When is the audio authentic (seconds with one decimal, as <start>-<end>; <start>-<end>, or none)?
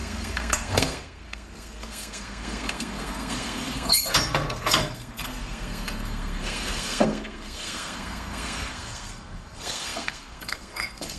none